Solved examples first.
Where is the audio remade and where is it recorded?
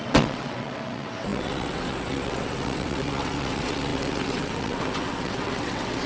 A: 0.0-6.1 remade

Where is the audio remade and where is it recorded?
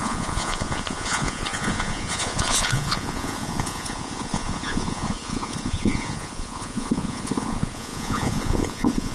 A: 0.0-9.1 remade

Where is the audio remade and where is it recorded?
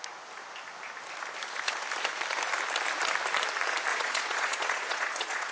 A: 0.0-3.9 recorded; 3.9-5.5 remade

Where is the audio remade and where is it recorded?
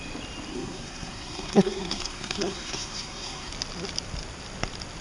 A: 0.0-0.5 recorded; 0.5-3.5 remade; 3.5-5.0 recorded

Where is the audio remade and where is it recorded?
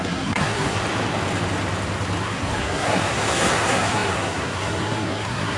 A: 0.0-0.8 remade; 0.8-2.2 recorded; 2.2-5.6 remade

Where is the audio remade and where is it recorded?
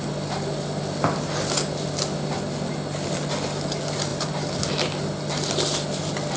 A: 0.0-6.4 recorded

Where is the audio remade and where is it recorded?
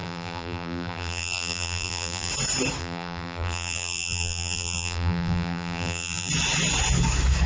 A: 0.0-2.3 remade; 2.3-2.8 recorded; 2.8-6.3 remade; 6.3-7.5 recorded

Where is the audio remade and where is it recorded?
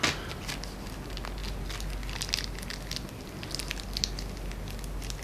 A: 0.0-5.2 recorded